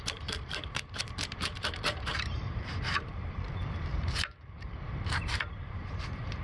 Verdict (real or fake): fake